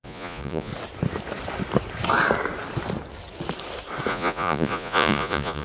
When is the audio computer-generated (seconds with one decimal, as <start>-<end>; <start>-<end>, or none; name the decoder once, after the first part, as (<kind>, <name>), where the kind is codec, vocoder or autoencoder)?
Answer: 0.0-0.7 (vocoder, Vocos); 4.1-5.6